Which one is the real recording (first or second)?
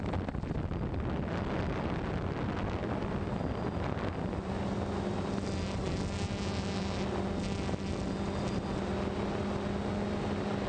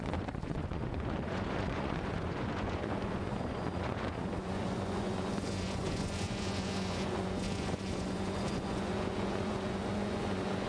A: first